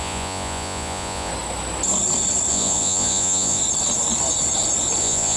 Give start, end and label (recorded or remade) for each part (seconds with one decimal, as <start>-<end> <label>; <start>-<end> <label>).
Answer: 0.0-1.3 remade; 1.3-2.5 recorded; 2.5-3.6 remade; 3.6-5.0 recorded; 5.0-5.4 remade